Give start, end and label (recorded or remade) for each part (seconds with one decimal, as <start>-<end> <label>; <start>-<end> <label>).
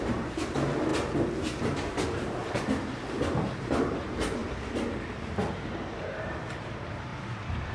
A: 0.0-0.9 remade; 0.9-1.6 recorded; 1.6-2.4 remade; 2.4-3.7 recorded; 3.7-4.4 remade; 4.4-5.5 recorded; 5.5-7.1 remade; 7.1-7.7 recorded